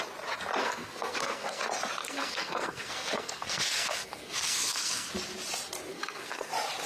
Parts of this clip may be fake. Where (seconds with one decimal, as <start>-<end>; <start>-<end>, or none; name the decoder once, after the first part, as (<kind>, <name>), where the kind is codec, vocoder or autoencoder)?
0.6-1.6 (codec, SNAC); 2.0-5.1; 5.9-6.5